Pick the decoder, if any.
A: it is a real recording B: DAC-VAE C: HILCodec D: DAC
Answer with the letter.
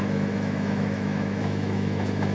B